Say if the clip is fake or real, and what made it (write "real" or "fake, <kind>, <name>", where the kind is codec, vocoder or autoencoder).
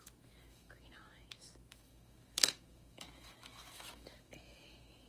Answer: fake, autoencoder, DAC-VAE